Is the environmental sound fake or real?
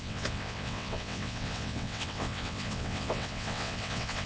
fake